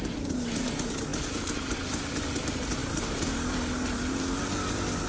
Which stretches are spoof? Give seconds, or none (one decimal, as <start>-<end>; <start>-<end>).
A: none